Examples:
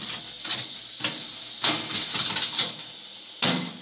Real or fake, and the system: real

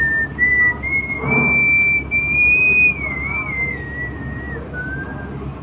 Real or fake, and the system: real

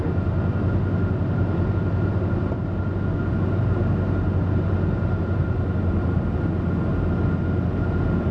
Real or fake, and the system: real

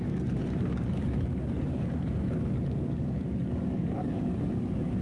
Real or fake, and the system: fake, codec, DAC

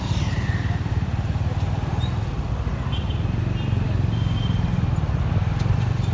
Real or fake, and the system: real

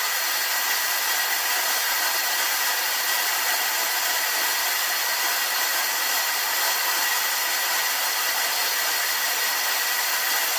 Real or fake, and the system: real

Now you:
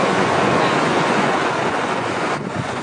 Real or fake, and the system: fake, vocoder, Vocos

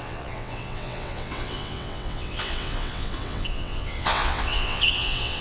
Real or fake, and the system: fake, vocoder, WaveNeXt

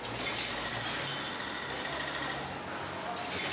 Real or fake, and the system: real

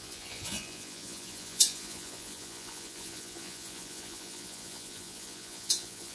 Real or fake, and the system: fake, vocoder, Vocos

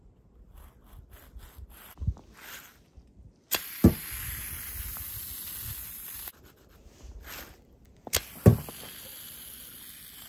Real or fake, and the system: real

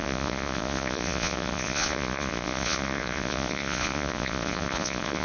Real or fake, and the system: fake, vocoder, Vocos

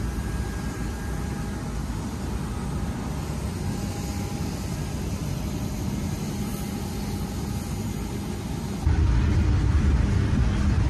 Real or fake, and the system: real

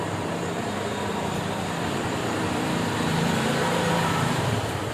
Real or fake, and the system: fake, vocoder, BigVGAN v2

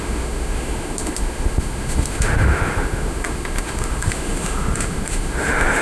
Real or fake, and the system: fake, autoencoder, DAC-VAE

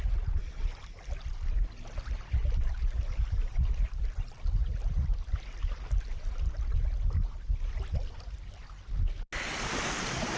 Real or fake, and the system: real